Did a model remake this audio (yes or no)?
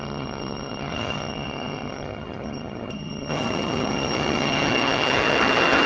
yes